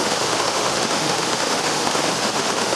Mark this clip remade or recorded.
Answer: remade